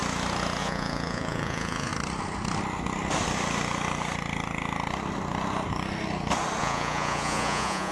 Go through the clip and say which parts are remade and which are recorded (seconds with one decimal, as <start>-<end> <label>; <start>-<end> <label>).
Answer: 0.0-0.6 recorded; 0.6-1.9 remade; 1.9-6.6 recorded; 6.6-7.9 remade